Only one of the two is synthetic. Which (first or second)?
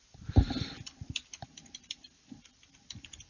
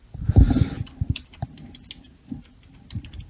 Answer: first